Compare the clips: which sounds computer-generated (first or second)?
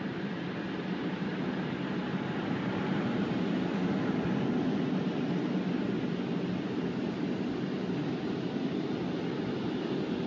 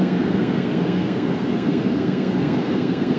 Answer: second